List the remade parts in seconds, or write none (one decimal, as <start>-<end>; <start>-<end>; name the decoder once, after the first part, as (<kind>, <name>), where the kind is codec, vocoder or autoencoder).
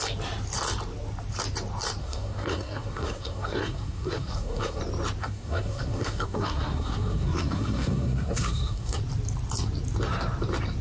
2.0-4.8 (codec, SNAC); 5.2-9.0